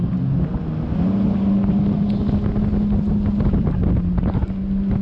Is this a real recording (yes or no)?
yes